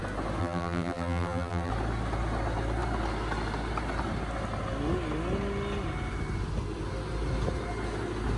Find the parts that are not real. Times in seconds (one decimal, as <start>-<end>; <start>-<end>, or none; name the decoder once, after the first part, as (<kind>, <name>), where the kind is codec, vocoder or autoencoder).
0.4-1.7 (vocoder, BigVGAN v2)